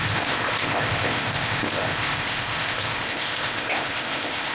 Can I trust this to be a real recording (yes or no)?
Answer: no